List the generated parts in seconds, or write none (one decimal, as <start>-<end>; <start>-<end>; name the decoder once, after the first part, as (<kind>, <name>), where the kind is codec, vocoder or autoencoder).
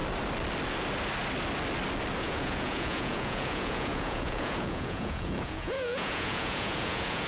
2.2-7.3 (vocoder, Vocos)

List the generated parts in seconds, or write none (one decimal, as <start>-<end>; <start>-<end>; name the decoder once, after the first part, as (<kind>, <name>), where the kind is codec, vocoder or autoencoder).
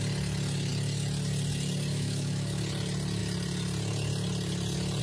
1.9-2.6 (autoencoder, DAC-VAE)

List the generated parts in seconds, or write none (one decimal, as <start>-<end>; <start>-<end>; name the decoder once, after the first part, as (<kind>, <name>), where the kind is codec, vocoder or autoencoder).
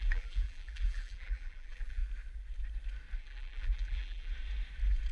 0.0-2.0 (vocoder, BigVGAN v2); 3.2-4.3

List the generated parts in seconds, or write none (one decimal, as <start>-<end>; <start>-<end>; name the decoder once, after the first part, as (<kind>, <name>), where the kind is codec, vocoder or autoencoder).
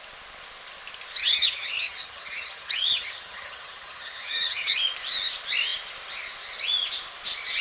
1.2-4.8 (vocoder, HiFi-GAN)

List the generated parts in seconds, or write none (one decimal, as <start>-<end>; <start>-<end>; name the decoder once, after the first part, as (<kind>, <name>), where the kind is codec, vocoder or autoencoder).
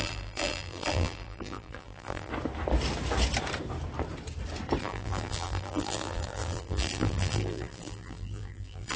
0.0-2.3 (vocoder, BigVGAN v2); 4.8-9.0